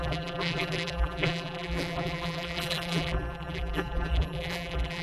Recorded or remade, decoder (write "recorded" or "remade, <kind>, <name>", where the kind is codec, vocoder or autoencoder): remade, vocoder, BigVGAN v2